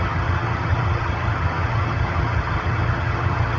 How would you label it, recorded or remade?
remade